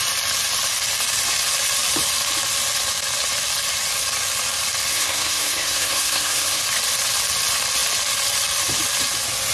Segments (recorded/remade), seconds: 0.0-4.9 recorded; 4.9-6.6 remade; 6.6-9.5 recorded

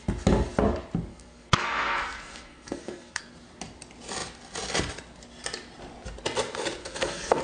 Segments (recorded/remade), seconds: 0.0-1.1 recorded; 1.1-3.2 remade; 3.2-6.8 recorded; 6.8-7.4 remade

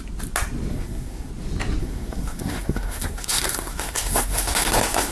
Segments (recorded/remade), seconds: 0.0-0.7 recorded; 0.7-1.3 remade; 1.3-1.8 recorded; 1.8-5.1 remade

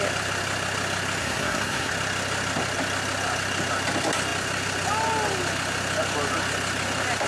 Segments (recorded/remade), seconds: 0.0-1.2 recorded; 1.2-1.9 remade; 1.9-7.3 recorded

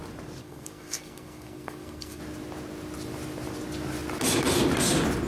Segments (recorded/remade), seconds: 0.0-0.4 recorded; 0.4-2.2 remade; 2.2-5.3 recorded

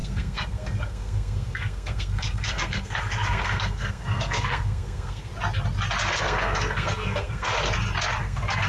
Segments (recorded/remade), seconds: 0.0-5.3 remade; 5.3-6.2 recorded; 6.2-7.5 remade; 7.5-8.2 recorded; 8.2-8.7 remade